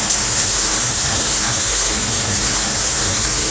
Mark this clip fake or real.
fake